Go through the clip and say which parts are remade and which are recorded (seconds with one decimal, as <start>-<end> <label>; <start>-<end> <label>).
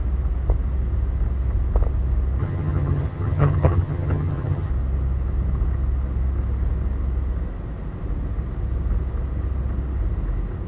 0.0-2.4 recorded; 2.4-4.7 remade; 4.7-10.7 recorded